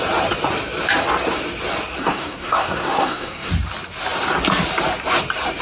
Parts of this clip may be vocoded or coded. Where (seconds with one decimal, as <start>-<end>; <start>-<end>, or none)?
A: 2.0-3.5